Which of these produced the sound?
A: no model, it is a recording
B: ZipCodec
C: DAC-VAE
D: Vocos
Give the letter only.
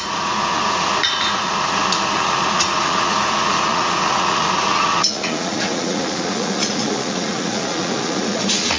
D